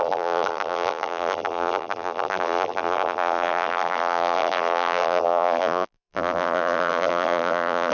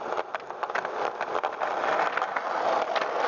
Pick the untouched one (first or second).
second